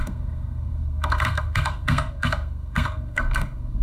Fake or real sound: fake